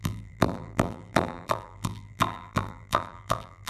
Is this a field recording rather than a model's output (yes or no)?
no